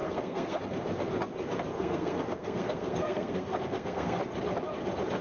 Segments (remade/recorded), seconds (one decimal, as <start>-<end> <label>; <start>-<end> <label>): 0.0-0.6 remade; 0.6-1.7 recorded; 1.7-4.2 remade; 4.2-5.2 recorded